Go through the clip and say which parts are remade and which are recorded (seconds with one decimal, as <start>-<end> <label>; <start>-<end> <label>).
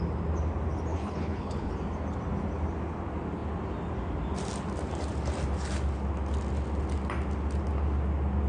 0.0-0.9 recorded; 0.9-1.7 remade; 1.7-8.5 recorded